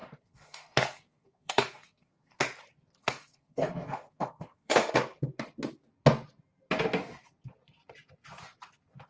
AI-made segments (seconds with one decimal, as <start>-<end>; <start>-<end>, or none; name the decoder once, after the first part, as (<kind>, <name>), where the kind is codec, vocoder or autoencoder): 0.0-2.4 (codec, SNAC); 3.0-4.9